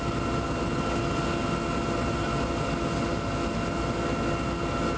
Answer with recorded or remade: recorded